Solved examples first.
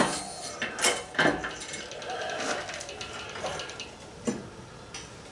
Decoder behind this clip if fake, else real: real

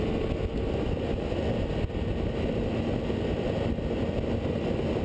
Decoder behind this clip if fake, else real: real